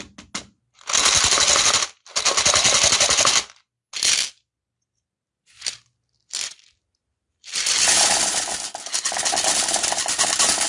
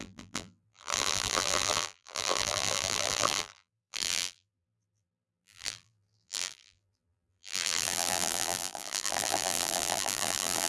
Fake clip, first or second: second